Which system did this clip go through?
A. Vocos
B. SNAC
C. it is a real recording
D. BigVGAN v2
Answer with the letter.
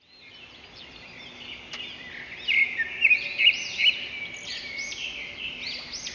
C